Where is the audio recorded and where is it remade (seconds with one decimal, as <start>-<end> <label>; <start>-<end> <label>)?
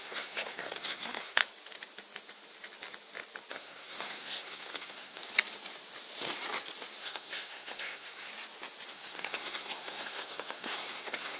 0.0-1.4 remade; 1.4-3.5 recorded; 3.5-5.2 remade; 5.2-7.0 recorded; 7.0-8.3 remade; 8.3-8.9 recorded; 8.9-11.4 remade